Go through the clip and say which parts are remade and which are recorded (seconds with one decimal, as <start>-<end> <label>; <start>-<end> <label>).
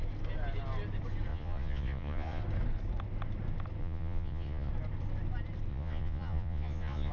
0.0-1.3 recorded; 1.3-2.4 remade; 2.4-3.8 recorded; 3.8-4.7 remade; 4.7-5.7 recorded; 5.7-7.1 remade